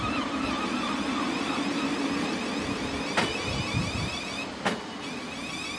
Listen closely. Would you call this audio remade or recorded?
recorded